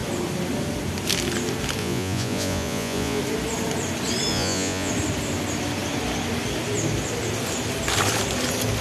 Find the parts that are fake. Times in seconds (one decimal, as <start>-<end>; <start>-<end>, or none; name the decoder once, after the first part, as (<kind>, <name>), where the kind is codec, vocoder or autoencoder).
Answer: 1.8-3.2 (vocoder, Vocos); 4.3-4.9